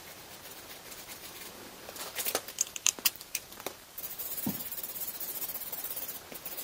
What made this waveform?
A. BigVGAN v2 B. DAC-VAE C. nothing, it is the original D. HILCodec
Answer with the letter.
A